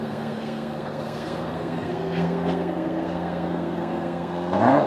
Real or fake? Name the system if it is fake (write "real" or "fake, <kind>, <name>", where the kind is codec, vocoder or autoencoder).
fake, codec, SNAC